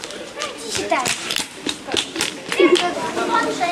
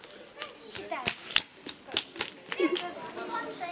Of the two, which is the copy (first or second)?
first